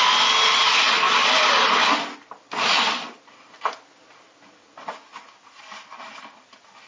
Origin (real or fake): real